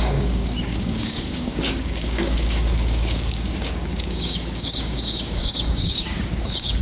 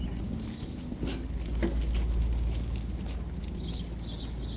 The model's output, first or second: first